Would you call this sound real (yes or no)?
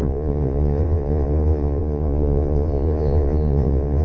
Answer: no